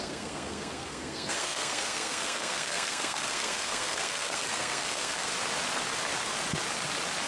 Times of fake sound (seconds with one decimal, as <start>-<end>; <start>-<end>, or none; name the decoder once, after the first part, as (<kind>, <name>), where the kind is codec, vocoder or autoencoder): 0.0-5.3 (codec, SNAC)